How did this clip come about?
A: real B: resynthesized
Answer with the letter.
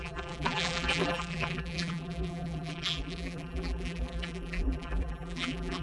B